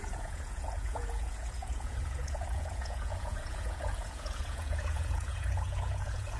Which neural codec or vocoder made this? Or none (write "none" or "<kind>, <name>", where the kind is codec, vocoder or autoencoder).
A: vocoder, Vocos